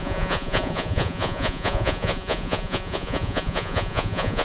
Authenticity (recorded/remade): remade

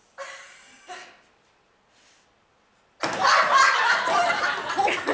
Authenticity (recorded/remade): recorded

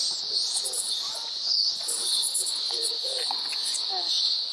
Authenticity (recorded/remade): remade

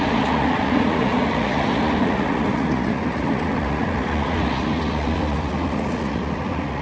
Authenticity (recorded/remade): remade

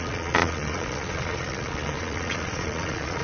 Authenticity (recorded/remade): remade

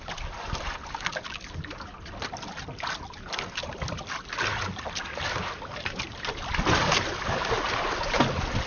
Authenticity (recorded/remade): recorded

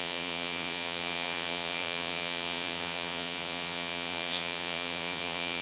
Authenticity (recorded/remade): remade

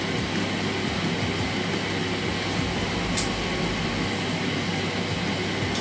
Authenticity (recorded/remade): recorded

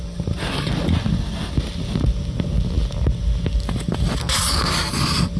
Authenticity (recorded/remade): recorded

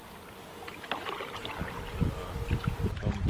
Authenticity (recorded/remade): recorded